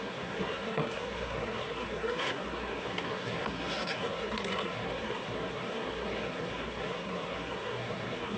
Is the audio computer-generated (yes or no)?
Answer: yes